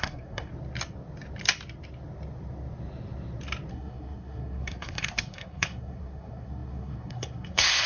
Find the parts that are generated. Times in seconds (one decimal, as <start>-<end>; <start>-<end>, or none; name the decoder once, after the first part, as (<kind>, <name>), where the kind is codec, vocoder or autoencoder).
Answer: 0.0-0.5 (codec, SNAC); 3.7-7.9